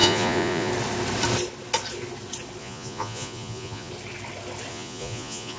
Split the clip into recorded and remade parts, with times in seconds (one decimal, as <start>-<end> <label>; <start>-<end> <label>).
0.0-0.7 remade; 0.7-2.6 recorded; 2.6-3.9 remade; 3.9-4.7 recorded; 4.7-5.6 remade